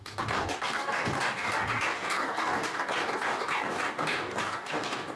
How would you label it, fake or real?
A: fake